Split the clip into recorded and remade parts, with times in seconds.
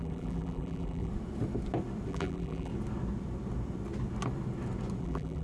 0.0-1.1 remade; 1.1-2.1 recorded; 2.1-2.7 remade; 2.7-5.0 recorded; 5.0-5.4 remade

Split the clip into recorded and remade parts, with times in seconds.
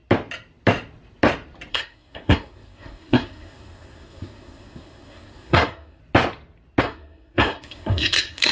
0.0-1.7 recorded; 1.7-6.0 remade; 6.0-6.8 recorded; 6.8-8.5 remade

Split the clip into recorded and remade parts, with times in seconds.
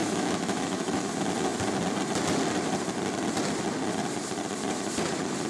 0.0-1.1 remade; 1.1-5.5 recorded